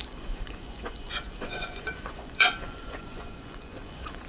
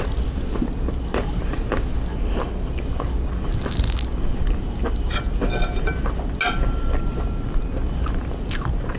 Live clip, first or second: second